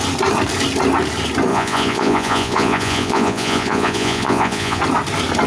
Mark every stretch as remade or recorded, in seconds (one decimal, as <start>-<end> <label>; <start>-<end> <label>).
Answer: 0.0-1.5 recorded; 1.5-4.8 remade; 4.8-5.5 recorded